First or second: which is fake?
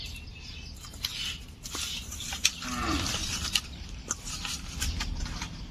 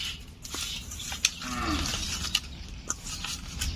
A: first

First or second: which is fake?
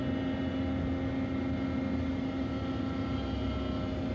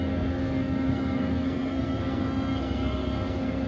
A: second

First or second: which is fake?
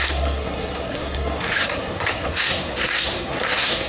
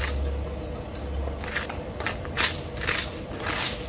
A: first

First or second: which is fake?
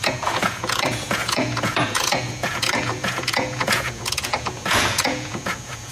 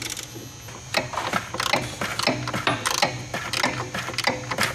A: first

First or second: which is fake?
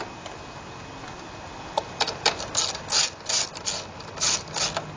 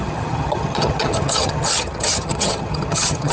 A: second